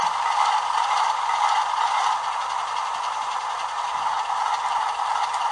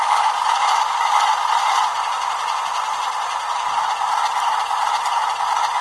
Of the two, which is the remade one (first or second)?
first